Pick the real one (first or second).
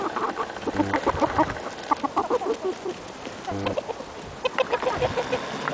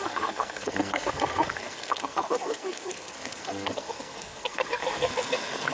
first